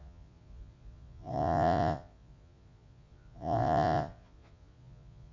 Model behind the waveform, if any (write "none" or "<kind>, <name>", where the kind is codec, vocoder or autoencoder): vocoder, Vocos